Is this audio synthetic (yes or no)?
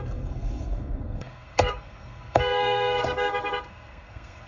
yes